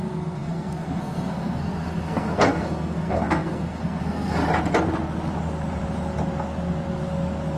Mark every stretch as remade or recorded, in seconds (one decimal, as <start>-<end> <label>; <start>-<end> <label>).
0.0-4.4 remade; 4.4-7.6 recorded

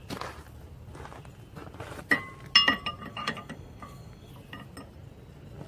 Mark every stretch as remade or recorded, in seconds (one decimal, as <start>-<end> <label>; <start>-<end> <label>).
0.0-3.1 recorded; 3.1-4.3 remade; 4.3-5.7 recorded

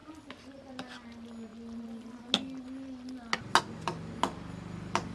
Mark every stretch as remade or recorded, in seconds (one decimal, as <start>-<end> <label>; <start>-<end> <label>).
0.0-5.1 recorded

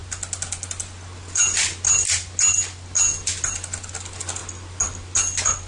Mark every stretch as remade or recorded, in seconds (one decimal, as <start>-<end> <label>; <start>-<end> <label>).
0.0-5.7 recorded

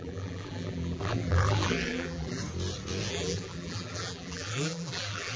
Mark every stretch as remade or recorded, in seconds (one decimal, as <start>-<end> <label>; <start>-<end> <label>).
0.0-2.4 remade; 2.4-3.1 recorded; 3.1-5.4 remade

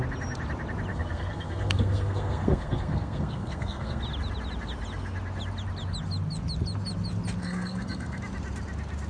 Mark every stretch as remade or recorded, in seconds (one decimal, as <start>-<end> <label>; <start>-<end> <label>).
0.0-0.9 recorded; 0.9-4.0 remade; 4.0-7.4 recorded; 7.4-8.2 remade; 8.2-9.1 recorded

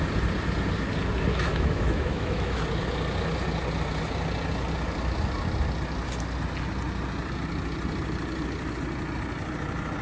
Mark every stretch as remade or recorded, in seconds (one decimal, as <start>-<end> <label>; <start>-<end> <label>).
0.0-1.3 recorded; 1.3-2.6 remade; 2.6-10.0 recorded

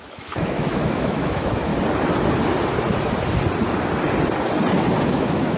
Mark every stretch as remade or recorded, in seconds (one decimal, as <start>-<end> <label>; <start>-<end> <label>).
0.0-1.7 remade; 1.7-5.1 recorded; 5.1-5.6 remade